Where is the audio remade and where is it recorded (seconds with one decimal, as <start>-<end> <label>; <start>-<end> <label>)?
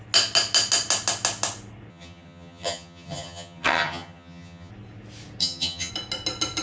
0.0-1.9 recorded; 1.9-4.7 remade; 4.7-5.4 recorded; 5.4-5.9 remade; 5.9-6.6 recorded